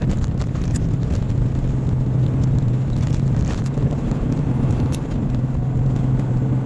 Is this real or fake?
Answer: real